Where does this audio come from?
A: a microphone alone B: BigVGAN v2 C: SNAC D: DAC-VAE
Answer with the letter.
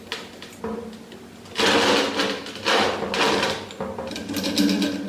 A